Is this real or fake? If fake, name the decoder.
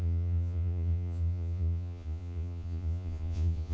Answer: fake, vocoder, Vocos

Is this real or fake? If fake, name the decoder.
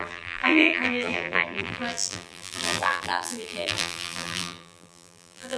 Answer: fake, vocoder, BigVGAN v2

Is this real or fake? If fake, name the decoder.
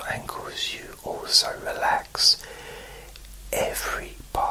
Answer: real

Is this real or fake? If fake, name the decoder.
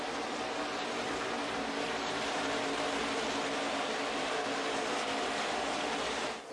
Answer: real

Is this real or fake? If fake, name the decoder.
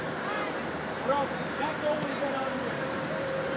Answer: fake, vocoder, BigVGAN v2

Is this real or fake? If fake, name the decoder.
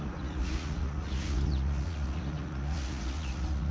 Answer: fake, vocoder, Vocos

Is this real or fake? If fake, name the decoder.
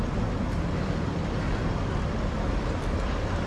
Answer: real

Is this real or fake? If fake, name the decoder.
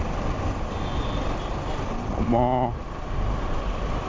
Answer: real